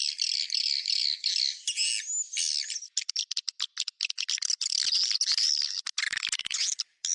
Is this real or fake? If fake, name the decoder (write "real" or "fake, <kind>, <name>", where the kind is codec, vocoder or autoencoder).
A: real